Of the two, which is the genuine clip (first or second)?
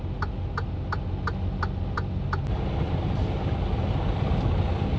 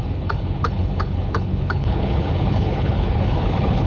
first